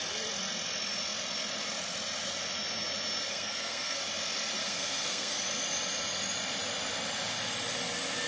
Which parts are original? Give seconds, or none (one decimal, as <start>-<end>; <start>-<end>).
0.0-3.3; 4.0-4.6; 5.4-8.3